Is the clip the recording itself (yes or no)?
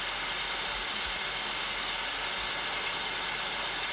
yes